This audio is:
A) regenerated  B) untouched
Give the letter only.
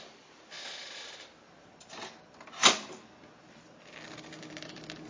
B